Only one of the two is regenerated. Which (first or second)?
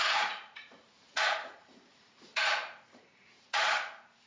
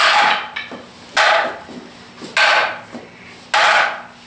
first